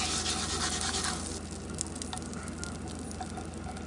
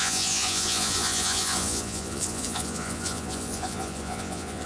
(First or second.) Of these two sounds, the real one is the first